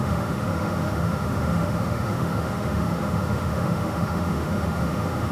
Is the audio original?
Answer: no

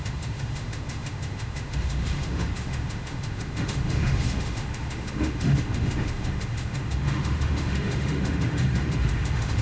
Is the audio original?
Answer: no